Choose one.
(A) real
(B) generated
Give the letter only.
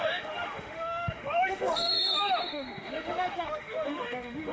B